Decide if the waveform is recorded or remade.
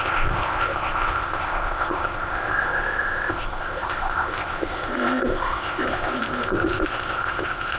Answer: remade